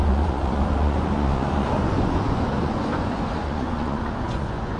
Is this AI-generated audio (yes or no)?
yes